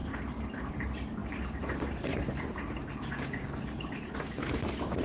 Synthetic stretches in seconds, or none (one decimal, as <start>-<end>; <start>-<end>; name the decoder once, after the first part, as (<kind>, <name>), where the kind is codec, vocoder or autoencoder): 0.0-0.7 (vocoder, BigVGAN v2); 1.2-4.2